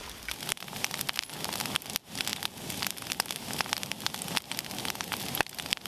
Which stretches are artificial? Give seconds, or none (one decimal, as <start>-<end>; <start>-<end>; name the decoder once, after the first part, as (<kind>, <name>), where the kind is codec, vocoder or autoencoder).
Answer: none